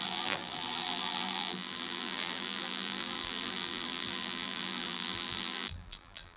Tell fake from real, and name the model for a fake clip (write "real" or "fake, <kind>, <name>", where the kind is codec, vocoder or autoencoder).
fake, vocoder, BigVGAN v2